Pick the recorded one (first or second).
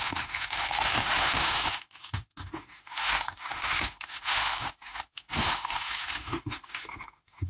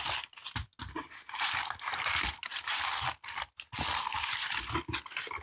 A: second